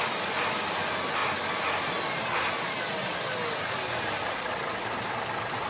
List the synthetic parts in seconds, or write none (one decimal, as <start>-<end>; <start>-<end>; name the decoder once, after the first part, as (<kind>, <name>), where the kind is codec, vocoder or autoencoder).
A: none